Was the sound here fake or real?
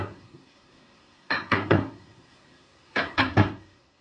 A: fake